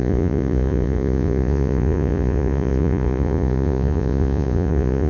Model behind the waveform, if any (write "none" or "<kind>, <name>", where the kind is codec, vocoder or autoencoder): vocoder, Vocos